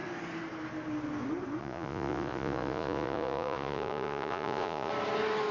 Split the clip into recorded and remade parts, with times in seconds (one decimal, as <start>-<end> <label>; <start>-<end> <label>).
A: 0.0-1.6 recorded; 1.6-4.9 remade; 4.9-5.5 recorded